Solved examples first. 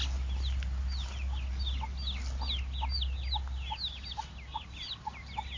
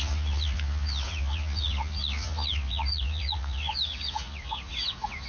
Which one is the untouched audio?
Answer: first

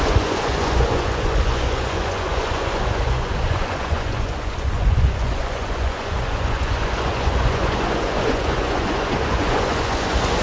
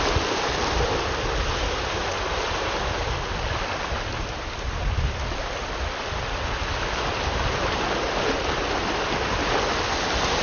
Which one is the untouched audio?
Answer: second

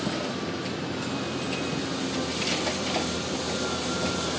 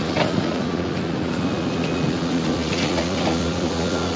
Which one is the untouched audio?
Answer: first